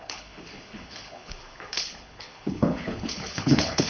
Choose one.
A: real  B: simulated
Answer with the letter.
B